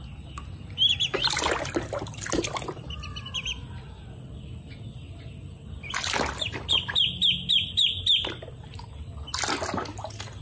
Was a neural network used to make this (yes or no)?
no